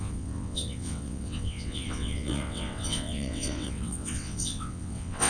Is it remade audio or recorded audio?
remade